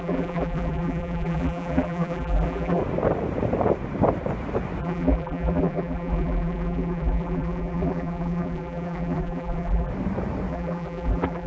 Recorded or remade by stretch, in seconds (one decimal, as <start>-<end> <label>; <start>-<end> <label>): 0.0-2.8 remade; 2.8-4.8 recorded; 4.8-9.9 remade; 9.9-10.5 recorded; 10.5-11.5 remade

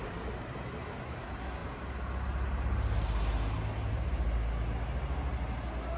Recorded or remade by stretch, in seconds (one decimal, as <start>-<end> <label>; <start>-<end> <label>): 0.0-6.0 recorded